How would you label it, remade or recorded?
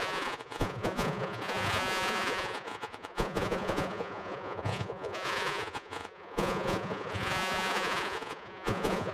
remade